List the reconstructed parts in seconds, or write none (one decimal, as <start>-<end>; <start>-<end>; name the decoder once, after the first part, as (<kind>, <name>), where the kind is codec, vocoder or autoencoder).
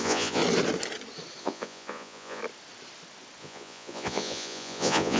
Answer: 0.0-0.4 (vocoder, Vocos); 1.4-2.4; 3.4-5.2